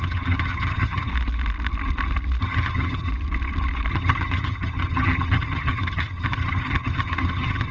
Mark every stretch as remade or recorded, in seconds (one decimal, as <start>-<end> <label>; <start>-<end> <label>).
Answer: 0.0-1.1 remade; 1.1-2.4 recorded; 2.4-3.1 remade; 3.1-3.9 recorded; 3.9-7.7 remade